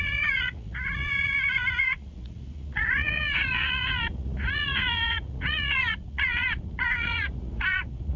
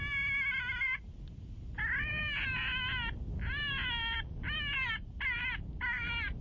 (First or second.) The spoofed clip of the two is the first